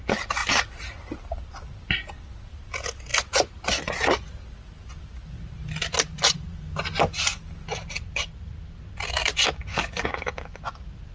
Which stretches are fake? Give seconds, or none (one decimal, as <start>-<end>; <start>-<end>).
9.7-10.6